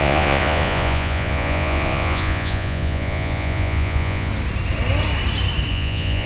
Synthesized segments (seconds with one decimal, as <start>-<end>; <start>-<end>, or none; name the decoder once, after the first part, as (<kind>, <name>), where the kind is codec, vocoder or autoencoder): 0.0-4.3 (vocoder, Vocos); 5.7-6.3